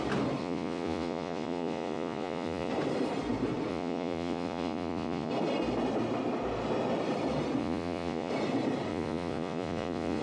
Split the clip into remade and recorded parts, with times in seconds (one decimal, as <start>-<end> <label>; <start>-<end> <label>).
0.0-0.4 recorded; 0.4-2.7 remade; 2.7-3.7 recorded; 3.7-5.3 remade; 5.3-7.6 recorded; 7.6-8.3 remade; 8.3-8.9 recorded; 8.9-10.2 remade